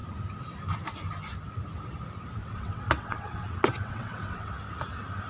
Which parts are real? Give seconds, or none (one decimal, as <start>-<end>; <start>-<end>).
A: 0.0-2.4; 4.5-5.3